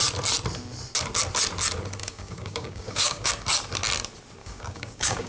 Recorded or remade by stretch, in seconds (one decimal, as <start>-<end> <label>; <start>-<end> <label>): 0.0-2.0 recorded; 2.0-3.3 remade; 3.3-4.4 recorded; 4.4-5.3 remade

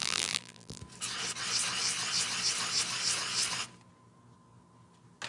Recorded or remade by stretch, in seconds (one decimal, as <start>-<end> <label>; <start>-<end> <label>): 0.0-0.8 remade; 0.8-5.3 recorded

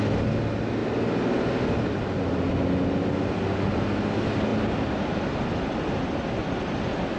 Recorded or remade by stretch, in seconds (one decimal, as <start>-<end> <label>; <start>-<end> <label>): 0.0-7.2 recorded

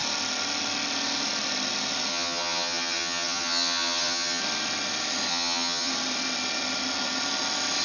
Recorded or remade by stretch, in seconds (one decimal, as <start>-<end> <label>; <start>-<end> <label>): 0.0-2.1 recorded; 2.1-4.4 remade; 4.4-5.3 recorded; 5.3-5.9 remade; 5.9-7.8 recorded